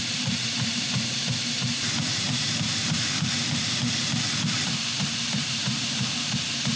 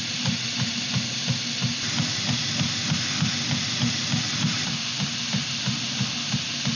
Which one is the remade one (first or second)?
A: first